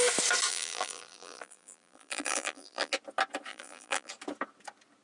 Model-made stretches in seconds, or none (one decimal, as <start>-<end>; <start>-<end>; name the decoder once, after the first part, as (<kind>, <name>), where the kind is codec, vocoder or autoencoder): 0.5-2.9 (vocoder, BigVGAN v2); 3.5-4.1